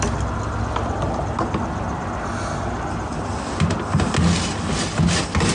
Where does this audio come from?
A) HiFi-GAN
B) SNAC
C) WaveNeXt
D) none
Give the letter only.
D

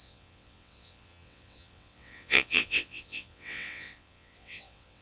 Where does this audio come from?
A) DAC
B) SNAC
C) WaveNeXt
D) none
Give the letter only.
C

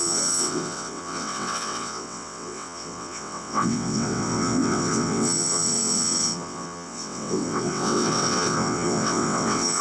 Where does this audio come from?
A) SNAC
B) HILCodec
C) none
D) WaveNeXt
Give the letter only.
D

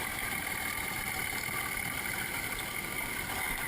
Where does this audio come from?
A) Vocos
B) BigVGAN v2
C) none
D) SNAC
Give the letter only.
C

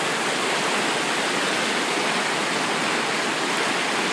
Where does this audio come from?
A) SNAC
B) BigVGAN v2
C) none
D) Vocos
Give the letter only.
C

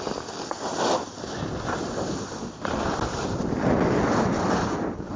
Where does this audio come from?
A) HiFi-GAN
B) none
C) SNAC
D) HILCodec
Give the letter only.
B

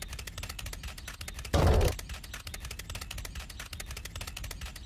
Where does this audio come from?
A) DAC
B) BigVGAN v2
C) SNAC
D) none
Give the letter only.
D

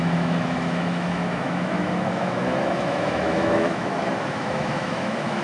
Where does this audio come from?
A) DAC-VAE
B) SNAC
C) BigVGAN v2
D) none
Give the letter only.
A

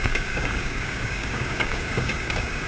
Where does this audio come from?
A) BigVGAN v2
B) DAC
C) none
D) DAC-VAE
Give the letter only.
B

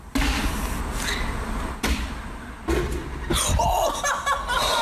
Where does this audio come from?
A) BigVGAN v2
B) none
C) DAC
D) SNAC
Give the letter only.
B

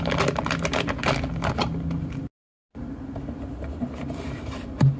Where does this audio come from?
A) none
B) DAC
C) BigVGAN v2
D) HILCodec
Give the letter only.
A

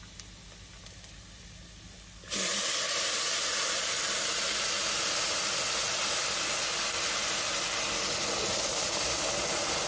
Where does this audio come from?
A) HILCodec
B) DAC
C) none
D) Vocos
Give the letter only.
C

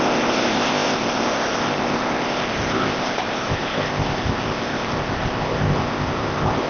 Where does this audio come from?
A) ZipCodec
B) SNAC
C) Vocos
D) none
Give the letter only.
A